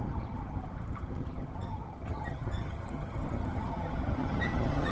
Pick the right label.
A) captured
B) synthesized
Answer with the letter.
B